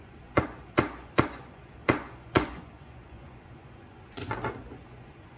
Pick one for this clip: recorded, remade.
remade